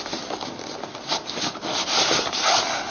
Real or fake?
real